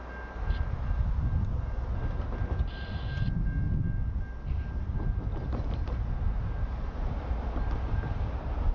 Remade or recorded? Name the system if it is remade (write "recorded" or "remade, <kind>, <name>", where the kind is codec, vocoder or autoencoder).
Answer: recorded